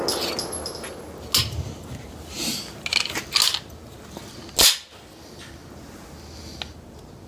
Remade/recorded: recorded